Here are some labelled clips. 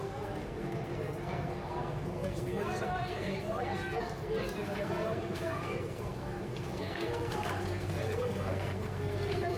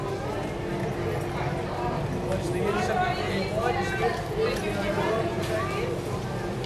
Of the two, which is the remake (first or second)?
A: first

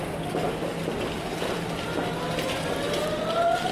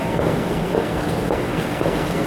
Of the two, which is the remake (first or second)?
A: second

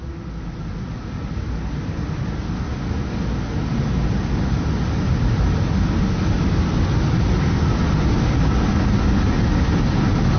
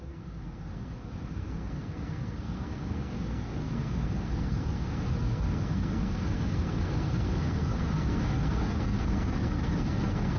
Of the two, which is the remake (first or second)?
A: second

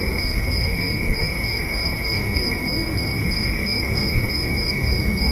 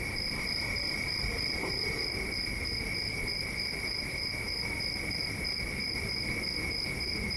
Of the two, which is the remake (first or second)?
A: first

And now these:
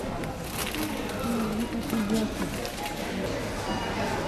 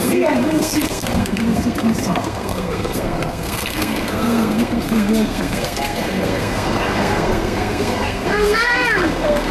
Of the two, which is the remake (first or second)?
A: second